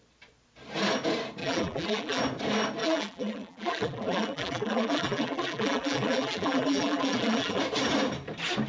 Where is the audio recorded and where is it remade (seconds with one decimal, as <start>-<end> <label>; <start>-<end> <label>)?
0.0-1.4 recorded; 1.4-2.2 remade; 2.2-2.8 recorded; 2.8-7.6 remade; 7.6-8.7 recorded